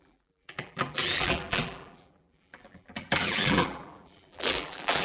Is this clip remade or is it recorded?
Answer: remade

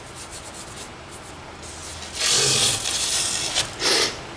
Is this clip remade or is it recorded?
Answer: recorded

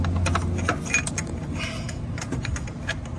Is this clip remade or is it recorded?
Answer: recorded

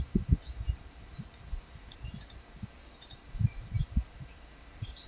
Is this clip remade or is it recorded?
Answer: remade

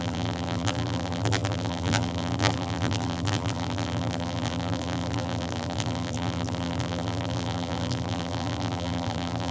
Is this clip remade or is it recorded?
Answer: remade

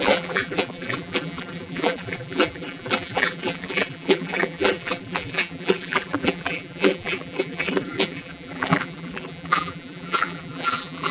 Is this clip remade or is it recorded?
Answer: remade